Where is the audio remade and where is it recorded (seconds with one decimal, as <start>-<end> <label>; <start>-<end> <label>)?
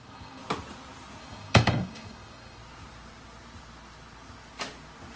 0.0-0.4 remade; 0.4-1.2 recorded; 1.2-2.6 remade; 2.6-5.2 recorded